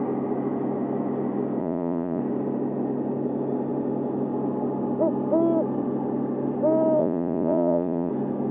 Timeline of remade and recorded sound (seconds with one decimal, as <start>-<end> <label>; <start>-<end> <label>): 0.0-1.6 recorded; 1.6-2.2 remade; 2.2-7.0 recorded; 7.0-8.1 remade; 8.1-8.5 recorded